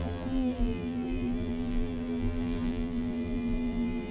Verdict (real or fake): fake